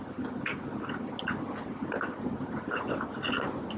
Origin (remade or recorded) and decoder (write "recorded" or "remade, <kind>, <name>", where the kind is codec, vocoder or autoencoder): recorded